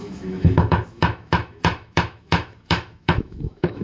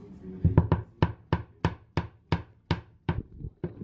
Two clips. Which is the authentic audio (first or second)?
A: second